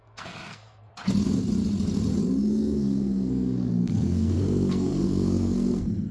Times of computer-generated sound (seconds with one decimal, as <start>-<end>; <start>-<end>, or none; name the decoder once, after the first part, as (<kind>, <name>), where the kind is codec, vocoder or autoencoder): 0.0-0.9 (codec, SNAC); 2.5-6.1